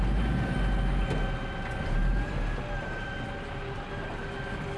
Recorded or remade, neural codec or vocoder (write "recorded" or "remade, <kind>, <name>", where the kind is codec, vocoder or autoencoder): recorded